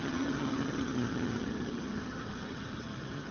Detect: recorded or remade remade